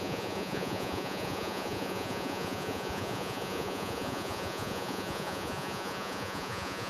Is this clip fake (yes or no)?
yes